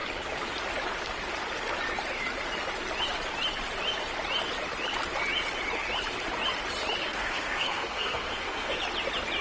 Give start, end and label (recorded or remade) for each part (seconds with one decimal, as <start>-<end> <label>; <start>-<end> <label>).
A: 0.0-7.0 recorded; 7.0-8.8 remade; 8.8-9.4 recorded